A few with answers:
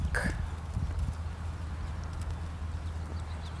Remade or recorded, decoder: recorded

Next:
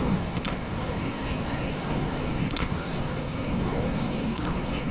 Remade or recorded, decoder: remade, codec, SNAC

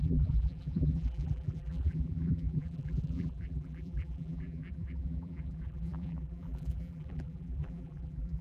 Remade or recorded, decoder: remade, vocoder, BigVGAN v2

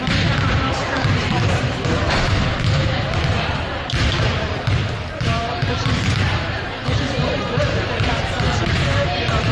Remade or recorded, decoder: remade, vocoder, BigVGAN v2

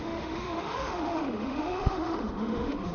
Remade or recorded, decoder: remade, autoencoder, DAC-VAE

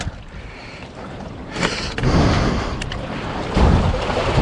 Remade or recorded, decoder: remade, vocoder, BigVGAN v2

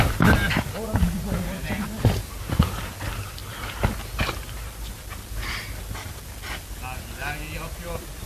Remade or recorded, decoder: recorded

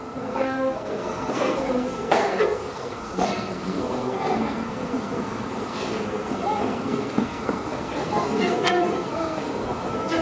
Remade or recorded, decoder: remade, codec, SNAC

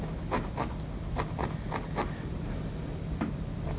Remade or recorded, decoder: recorded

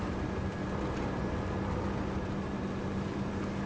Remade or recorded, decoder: recorded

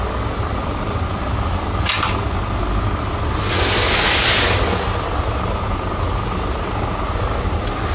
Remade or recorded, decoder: recorded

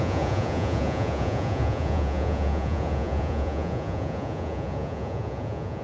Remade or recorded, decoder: remade, vocoder, Vocos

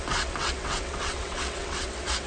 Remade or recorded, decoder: remade, vocoder, WaveNeXt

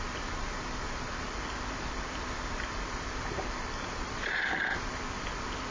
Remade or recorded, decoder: remade, vocoder, BigVGAN v2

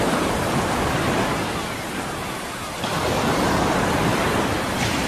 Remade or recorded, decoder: recorded